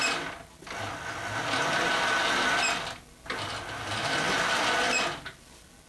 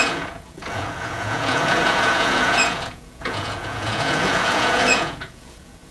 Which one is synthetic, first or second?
second